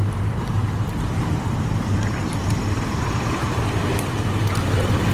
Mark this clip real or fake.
fake